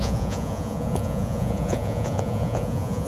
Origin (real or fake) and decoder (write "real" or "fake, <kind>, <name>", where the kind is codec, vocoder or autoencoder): fake, vocoder, Vocos